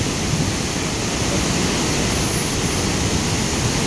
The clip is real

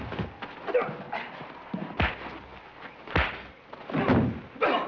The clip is real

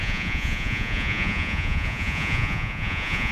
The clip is fake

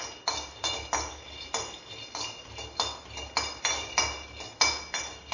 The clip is real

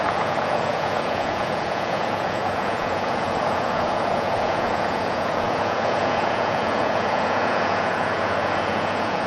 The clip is fake